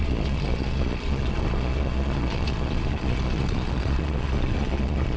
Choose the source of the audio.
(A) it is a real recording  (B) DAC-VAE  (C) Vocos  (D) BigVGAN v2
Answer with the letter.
C